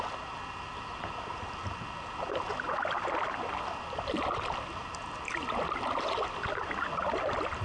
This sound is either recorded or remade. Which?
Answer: recorded